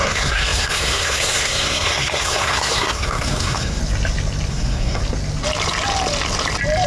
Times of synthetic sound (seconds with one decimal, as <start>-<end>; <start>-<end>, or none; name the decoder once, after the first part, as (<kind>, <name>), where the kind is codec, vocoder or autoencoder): 0.0-3.8 (codec, SNAC); 4.5-5.0

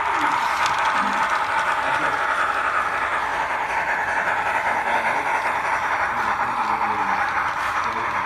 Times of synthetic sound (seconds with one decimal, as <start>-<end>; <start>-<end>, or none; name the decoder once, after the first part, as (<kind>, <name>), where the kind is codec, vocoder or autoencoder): none

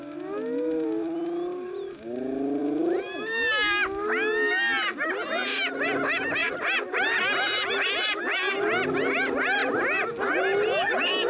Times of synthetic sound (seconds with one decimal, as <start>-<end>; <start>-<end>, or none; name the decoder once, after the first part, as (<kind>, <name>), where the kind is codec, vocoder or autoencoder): 2.6-3.2 (vocoder, BigVGAN v2); 6.4-8.2; 9.6-11.3